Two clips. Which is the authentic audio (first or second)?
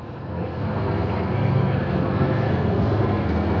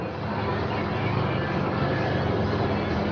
second